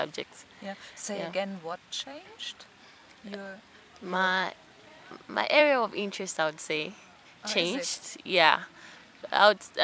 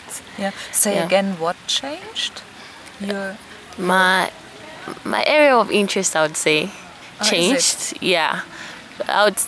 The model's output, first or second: first